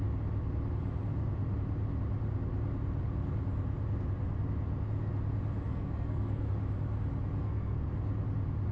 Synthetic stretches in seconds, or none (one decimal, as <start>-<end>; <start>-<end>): 5.7-6.5; 7.4-7.9